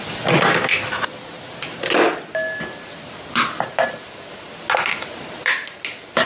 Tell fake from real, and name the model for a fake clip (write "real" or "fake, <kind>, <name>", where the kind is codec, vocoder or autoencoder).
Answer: real